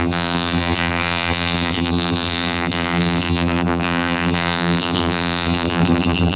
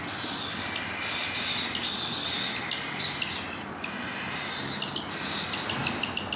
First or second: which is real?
second